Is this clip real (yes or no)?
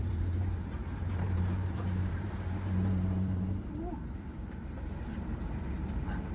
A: no